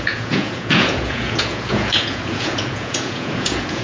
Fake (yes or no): yes